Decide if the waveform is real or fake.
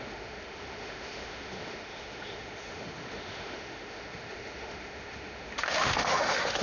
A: fake